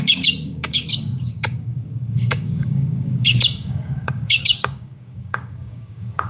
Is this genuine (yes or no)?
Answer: no